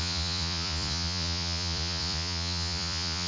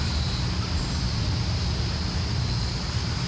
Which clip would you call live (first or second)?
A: second